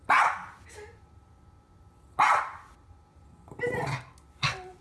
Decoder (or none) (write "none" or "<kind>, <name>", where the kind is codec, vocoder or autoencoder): none